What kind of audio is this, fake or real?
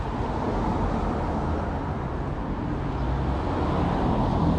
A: real